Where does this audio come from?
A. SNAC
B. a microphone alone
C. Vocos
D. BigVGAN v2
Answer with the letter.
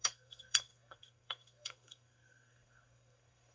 A